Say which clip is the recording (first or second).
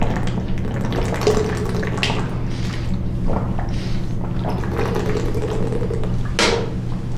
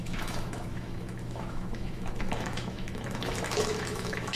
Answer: first